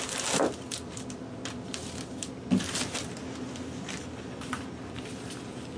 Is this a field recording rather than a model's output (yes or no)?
yes